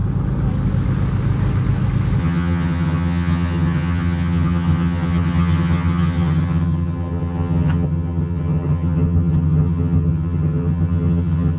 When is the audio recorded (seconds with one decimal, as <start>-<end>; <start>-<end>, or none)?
0.0-2.2